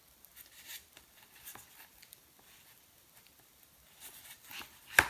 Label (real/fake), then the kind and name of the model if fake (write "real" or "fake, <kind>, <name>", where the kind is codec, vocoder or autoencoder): fake, vocoder, BigVGAN v2